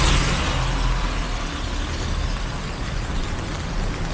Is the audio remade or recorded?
recorded